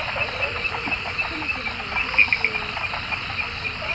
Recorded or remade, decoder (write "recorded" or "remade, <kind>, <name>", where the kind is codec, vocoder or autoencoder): recorded